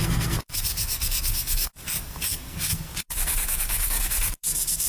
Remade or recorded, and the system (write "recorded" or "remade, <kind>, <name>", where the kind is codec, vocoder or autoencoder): remade, codec, SNAC